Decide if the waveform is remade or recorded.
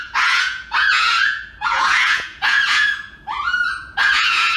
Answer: remade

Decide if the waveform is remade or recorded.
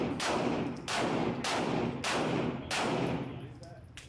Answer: recorded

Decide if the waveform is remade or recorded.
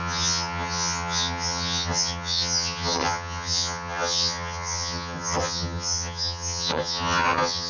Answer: remade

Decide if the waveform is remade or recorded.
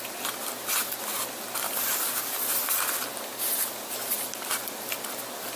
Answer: recorded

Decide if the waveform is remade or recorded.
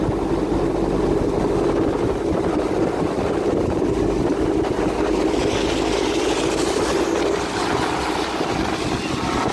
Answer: recorded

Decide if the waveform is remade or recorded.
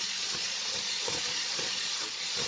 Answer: remade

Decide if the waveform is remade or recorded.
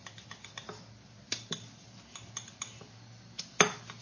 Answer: recorded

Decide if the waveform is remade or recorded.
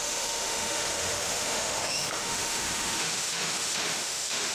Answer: remade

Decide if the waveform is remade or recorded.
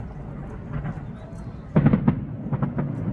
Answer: recorded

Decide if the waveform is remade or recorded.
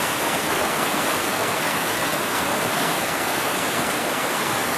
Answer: remade